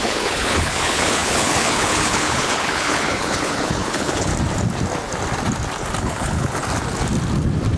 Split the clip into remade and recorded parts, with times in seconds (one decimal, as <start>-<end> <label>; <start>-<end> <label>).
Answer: 0.0-4.3 remade; 4.3-6.0 recorded; 6.0-6.6 remade; 6.6-7.8 recorded

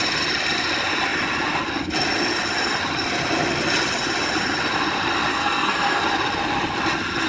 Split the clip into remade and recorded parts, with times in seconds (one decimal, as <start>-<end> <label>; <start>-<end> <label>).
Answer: 0.0-5.3 recorded; 5.3-6.0 remade; 6.0-7.3 recorded

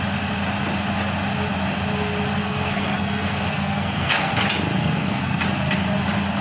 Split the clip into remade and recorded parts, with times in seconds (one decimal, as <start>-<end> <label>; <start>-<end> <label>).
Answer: 0.0-2.4 recorded; 2.4-4.3 remade; 4.3-4.8 recorded; 4.8-5.4 remade; 5.4-6.4 recorded